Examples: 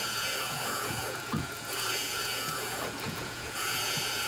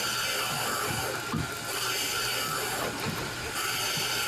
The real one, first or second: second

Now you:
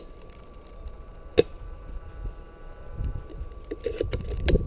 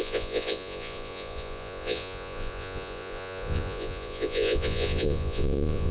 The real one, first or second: first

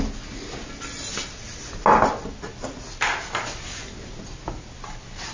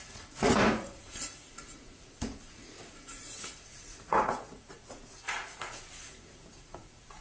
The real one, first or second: first